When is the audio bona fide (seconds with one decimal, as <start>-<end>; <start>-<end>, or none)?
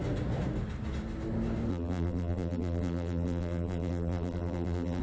0.0-1.7